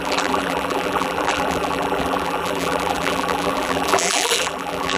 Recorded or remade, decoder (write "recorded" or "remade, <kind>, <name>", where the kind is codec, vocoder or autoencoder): remade, vocoder, BigVGAN v2